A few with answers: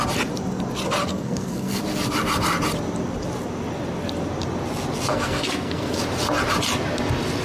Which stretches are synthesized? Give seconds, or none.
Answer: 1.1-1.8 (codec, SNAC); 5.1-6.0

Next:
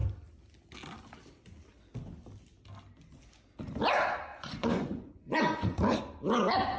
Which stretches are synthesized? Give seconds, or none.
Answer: 4.3-6.0 (vocoder, Vocos)